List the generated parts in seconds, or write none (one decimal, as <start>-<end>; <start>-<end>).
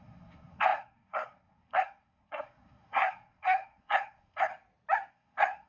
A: 0.0-4.5; 5.1-5.7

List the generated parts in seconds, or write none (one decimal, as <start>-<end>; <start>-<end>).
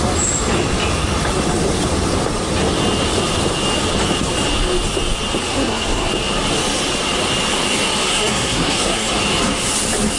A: 5.5-6.1; 8.1-9.1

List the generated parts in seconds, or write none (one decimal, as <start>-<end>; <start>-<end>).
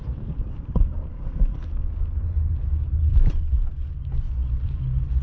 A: 1.1-1.7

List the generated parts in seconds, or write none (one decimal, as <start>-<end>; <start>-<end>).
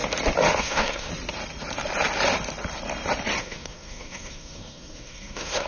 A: 0.6-1.1; 3.4-5.7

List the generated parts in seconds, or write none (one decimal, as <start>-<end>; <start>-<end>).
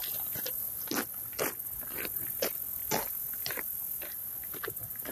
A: none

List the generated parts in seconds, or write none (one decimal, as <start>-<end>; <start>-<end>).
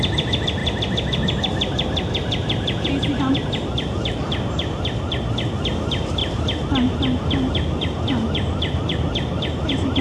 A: none